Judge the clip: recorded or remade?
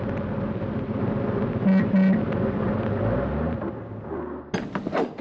recorded